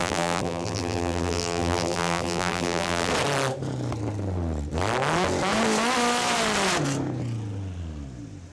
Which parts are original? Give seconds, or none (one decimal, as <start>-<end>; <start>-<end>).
3.1-8.5